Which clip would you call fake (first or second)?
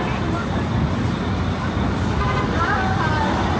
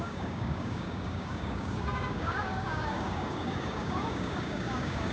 second